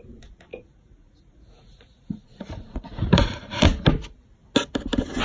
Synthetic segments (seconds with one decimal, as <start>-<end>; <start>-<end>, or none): 0.5-3.6